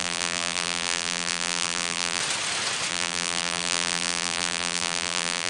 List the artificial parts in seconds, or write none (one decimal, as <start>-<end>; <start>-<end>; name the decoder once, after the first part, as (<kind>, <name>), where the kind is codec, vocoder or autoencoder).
0.0-2.2 (vocoder, BigVGAN v2); 2.9-5.5